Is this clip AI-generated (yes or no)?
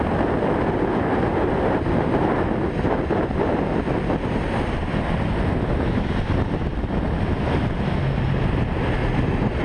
no